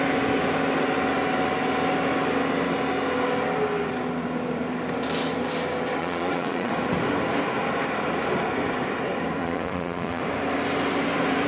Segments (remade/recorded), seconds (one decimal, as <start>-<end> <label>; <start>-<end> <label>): 0.0-6.0 recorded; 6.0-6.7 remade; 6.7-9.4 recorded; 9.4-10.2 remade; 10.2-11.5 recorded